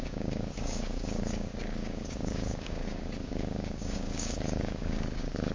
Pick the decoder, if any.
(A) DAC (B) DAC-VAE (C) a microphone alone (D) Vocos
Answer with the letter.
A